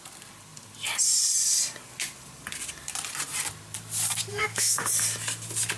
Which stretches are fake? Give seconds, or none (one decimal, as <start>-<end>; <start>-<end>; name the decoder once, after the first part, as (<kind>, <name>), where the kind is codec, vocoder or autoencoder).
4.3-4.9 (autoencoder, DAC-VAE)